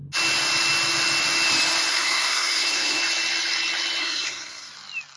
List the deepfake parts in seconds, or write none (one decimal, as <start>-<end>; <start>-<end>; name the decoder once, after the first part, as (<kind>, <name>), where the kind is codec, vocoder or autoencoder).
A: 1.9-3.0 (codec, SNAC); 4.0-4.7